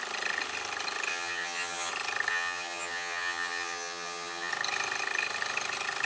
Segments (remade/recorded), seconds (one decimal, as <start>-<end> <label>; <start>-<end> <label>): 0.0-1.1 recorded; 1.1-1.9 remade; 1.9-2.3 recorded; 2.3-4.5 remade; 4.5-6.1 recorded